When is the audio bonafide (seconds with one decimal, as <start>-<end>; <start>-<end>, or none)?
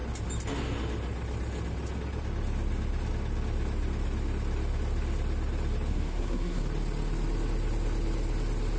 0.0-5.9; 6.6-8.8